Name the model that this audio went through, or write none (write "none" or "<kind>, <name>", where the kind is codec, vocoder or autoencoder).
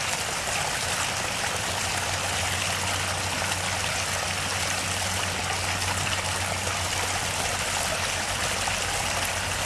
none